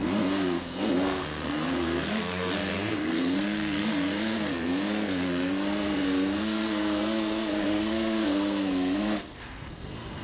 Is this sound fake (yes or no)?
yes